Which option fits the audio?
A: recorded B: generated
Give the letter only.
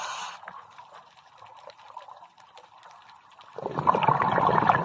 A